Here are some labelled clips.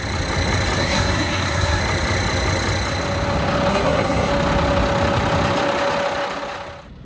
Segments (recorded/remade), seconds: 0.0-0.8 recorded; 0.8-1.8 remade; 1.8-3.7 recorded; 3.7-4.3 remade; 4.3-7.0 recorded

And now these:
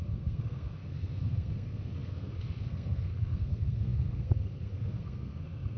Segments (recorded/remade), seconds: 0.0-5.8 remade

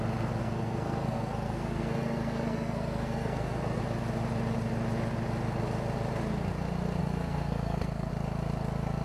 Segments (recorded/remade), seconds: 0.0-0.4 recorded; 0.4-3.8 remade; 3.8-7.0 recorded; 7.0-8.1 remade; 8.1-9.0 recorded

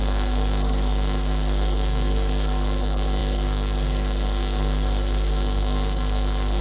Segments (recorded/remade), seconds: 0.0-6.6 remade

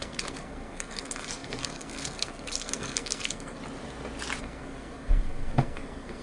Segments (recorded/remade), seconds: 0.0-3.6 remade; 3.6-4.4 recorded; 4.4-6.2 remade

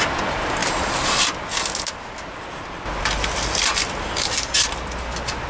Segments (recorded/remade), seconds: 0.0-5.5 recorded

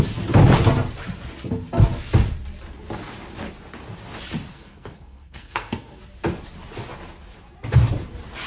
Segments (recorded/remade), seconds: 0.0-4.5 recorded; 4.5-6.0 remade; 6.0-8.5 recorded